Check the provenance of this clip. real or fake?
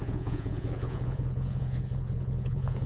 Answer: fake